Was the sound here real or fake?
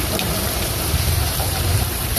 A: fake